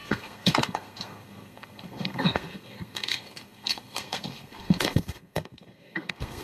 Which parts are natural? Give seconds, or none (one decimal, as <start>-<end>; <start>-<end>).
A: none